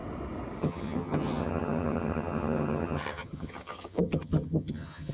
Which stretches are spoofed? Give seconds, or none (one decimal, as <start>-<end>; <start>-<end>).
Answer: 0.6-5.1